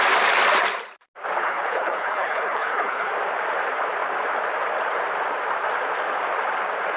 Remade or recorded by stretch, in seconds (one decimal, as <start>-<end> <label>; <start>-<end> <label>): 0.0-1.4 recorded; 1.4-3.1 remade; 3.1-7.0 recorded